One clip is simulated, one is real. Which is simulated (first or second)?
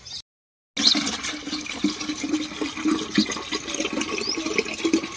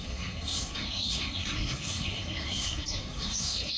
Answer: second